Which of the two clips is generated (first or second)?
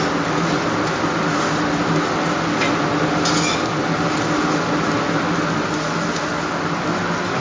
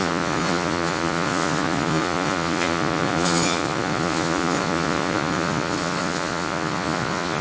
second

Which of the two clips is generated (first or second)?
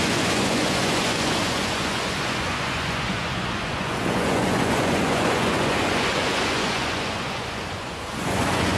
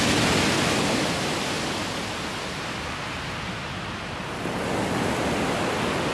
first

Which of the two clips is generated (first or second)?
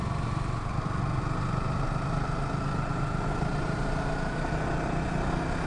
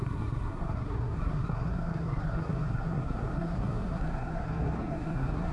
second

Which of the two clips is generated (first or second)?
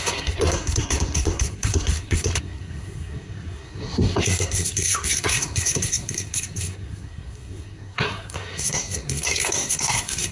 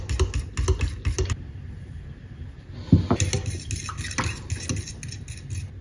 first